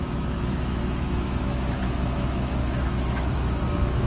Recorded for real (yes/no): no